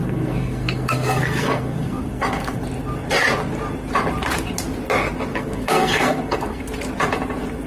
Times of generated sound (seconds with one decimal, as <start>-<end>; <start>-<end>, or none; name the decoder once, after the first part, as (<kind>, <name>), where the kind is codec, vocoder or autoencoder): 0.0-2.6 (codec, SNAC); 5.3-6.6